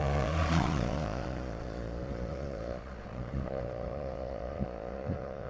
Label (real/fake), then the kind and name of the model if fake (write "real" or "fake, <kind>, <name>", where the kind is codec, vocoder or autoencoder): fake, vocoder, Vocos